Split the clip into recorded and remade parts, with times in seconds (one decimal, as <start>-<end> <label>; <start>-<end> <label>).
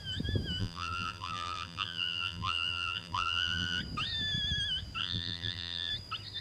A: 0.0-0.6 recorded; 0.6-3.8 remade; 3.8-5.0 recorded; 5.0-5.9 remade; 5.9-6.4 recorded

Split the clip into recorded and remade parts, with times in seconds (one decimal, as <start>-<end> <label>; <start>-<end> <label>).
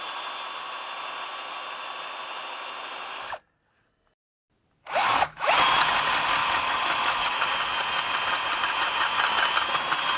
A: 0.0-5.0 recorded; 5.0-5.5 remade; 5.5-6.4 recorded; 6.4-7.4 remade; 7.4-10.2 recorded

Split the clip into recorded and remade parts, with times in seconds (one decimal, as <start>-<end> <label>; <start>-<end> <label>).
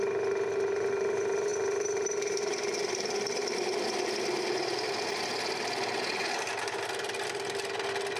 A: 0.0-8.2 recorded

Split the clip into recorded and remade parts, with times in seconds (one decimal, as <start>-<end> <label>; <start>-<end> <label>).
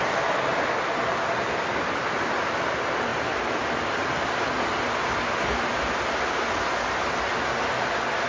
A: 0.0-8.3 recorded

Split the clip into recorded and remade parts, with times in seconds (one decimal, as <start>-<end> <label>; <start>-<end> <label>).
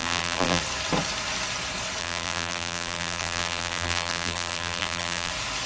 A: 0.0-0.6 remade; 0.6-2.0 recorded; 2.0-5.3 remade; 5.3-5.7 recorded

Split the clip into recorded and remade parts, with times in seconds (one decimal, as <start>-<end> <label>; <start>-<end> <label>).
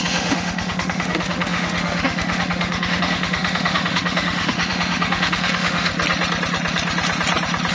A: 0.0-5.9 remade; 5.9-7.7 recorded